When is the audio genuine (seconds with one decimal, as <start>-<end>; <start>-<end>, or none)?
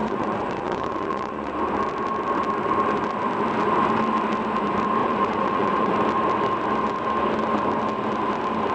1.5-5.0; 5.9-8.7